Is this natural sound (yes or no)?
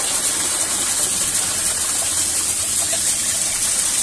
yes